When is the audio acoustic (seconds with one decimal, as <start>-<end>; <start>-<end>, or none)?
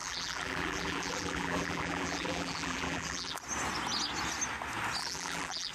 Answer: 3.4-5.0